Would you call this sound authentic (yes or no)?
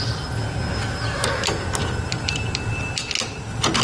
yes